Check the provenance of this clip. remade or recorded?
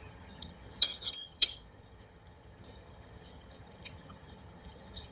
remade